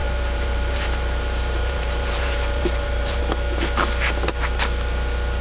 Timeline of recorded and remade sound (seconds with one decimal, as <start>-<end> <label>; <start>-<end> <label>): 0.0-3.2 remade; 3.2-5.4 recorded